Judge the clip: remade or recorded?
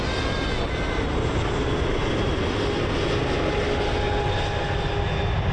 recorded